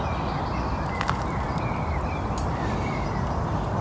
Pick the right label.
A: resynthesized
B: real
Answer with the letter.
B